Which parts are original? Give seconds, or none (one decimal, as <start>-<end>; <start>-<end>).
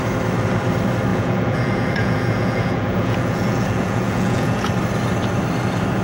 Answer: 0.0-1.1; 4.7-6.0